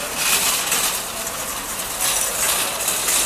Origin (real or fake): real